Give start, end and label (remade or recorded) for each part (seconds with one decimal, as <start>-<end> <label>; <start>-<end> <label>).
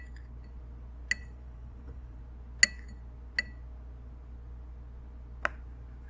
0.0-1.2 recorded; 1.2-2.2 remade; 2.2-6.1 recorded